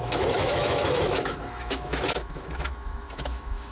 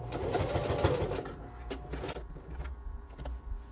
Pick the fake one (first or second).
first